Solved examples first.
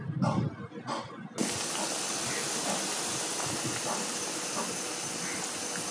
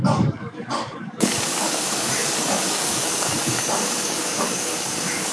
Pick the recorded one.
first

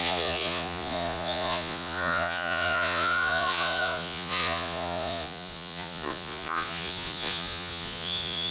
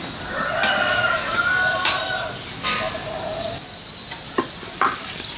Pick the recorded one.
second